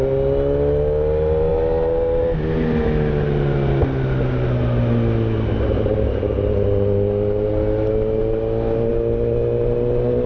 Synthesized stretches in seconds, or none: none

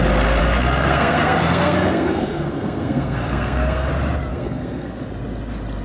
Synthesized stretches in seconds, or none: 0.4-3.9 (codec, SNAC); 4.3-5.0